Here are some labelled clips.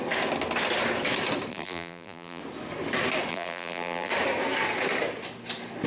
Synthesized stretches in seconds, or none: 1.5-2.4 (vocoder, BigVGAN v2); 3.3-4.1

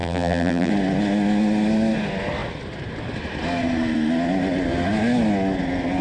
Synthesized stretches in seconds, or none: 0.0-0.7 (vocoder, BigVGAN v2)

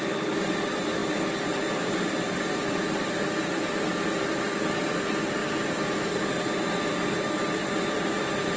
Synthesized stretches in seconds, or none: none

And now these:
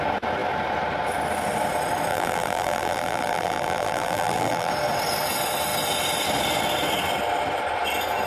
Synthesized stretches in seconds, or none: 2.1-4.7 (vocoder, BigVGAN v2)

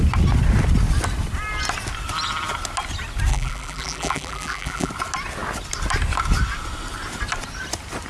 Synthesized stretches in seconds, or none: 3.3-4.9 (vocoder, BigVGAN v2)